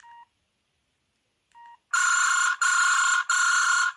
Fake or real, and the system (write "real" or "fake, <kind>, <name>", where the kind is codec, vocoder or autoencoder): real